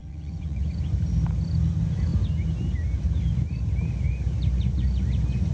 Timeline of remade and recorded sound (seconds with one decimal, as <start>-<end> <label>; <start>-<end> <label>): 0.0-0.7 remade; 0.7-5.5 recorded